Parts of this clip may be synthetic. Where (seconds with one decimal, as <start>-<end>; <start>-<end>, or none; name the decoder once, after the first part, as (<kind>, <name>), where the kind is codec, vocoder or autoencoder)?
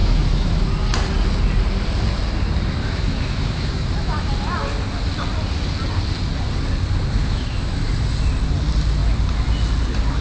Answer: 0.0-0.7 (autoencoder, DAC-VAE); 2.8-4.3; 7.2-7.8